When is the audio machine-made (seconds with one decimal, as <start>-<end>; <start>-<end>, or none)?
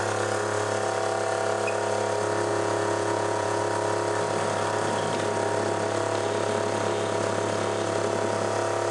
2.5-3.6